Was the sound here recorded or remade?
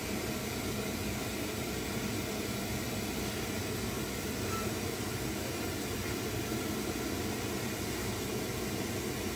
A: recorded